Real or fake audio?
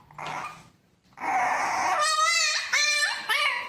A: real